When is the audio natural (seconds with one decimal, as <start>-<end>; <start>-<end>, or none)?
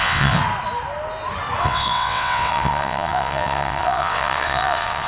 0.4-1.6